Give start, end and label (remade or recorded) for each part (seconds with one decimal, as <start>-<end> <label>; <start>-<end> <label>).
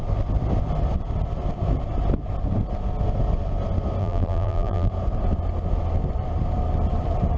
0.0-4.0 recorded; 4.0-4.9 remade; 4.9-7.4 recorded